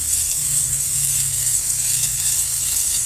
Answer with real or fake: fake